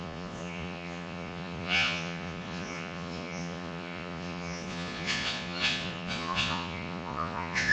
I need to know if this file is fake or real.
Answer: fake